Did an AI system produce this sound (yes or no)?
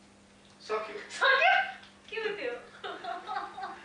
no